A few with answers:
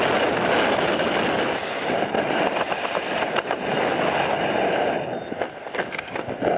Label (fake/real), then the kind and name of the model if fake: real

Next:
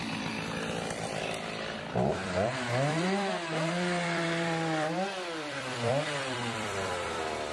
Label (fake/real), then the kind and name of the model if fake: fake, vocoder, BigVGAN v2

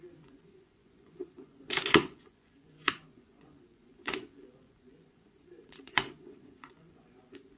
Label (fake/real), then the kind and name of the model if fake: fake, vocoder, Vocos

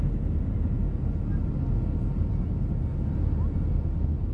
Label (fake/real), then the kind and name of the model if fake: real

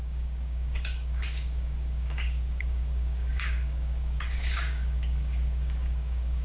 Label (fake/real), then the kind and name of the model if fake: fake, codec, DAC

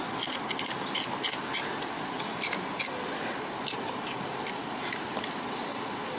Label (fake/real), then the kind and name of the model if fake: real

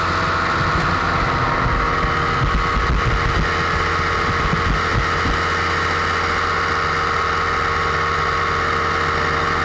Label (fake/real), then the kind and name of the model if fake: real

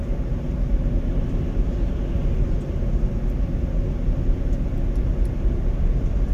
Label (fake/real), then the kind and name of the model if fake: real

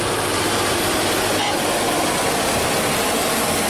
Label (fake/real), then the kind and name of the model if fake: real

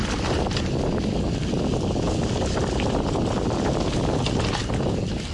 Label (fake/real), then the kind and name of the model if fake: real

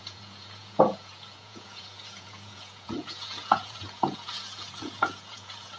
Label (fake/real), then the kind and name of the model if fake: fake, vocoder, Vocos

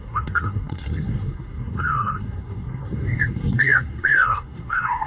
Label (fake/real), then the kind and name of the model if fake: fake, codec, SNAC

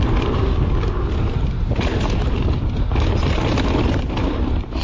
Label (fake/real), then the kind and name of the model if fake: real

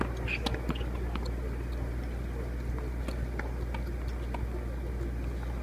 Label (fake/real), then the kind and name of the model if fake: real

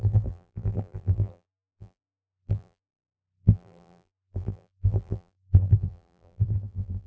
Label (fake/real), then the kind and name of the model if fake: fake, vocoder, BigVGAN v2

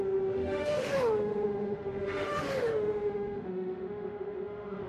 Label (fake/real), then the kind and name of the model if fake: fake, autoencoder, DAC-VAE